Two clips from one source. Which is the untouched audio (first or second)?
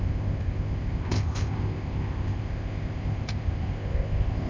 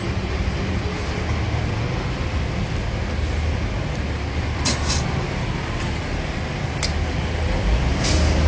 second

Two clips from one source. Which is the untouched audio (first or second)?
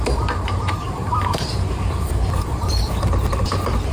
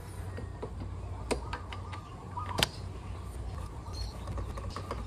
second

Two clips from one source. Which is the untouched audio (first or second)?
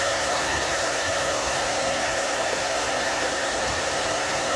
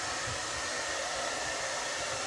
second